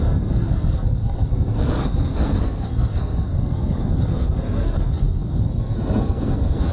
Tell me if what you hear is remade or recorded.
remade